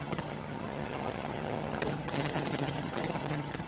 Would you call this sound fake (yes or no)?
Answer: yes